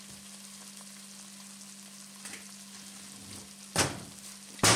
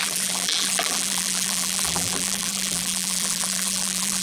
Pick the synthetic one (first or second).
second